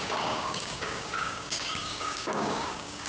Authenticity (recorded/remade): remade